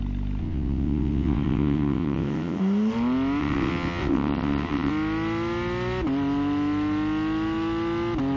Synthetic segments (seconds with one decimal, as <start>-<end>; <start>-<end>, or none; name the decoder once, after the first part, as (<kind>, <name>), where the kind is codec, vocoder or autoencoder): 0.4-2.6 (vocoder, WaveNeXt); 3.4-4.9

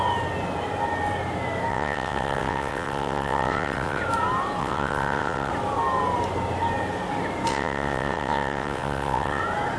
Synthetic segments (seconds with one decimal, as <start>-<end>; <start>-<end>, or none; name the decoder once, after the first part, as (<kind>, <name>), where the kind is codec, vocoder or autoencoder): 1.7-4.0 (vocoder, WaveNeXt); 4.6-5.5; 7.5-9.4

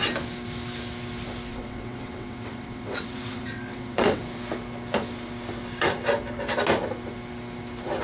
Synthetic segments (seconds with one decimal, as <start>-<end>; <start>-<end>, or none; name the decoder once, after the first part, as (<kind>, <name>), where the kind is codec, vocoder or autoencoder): 1.5-4.2 (vocoder, WaveNeXt)

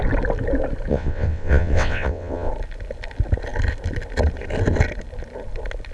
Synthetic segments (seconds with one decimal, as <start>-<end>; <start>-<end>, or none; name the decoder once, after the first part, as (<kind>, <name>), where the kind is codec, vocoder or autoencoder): 0.9-2.5 (vocoder, WaveNeXt)

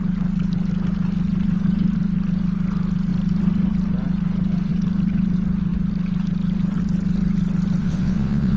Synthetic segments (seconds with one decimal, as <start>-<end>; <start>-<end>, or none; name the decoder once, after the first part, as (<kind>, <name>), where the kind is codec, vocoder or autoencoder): 7.8-8.6 (vocoder, WaveNeXt)

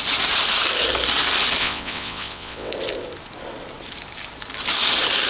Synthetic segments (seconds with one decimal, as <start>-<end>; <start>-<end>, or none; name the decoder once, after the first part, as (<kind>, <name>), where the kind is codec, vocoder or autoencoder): 1.6-2.7 (vocoder, WaveNeXt)

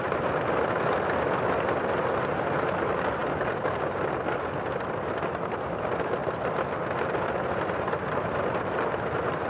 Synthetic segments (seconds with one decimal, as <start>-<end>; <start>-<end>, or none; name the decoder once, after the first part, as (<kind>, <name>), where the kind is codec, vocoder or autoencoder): none